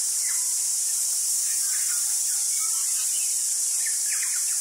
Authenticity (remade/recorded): remade